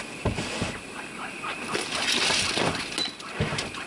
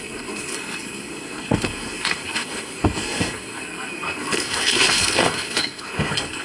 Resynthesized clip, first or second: second